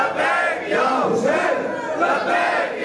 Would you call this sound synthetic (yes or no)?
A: no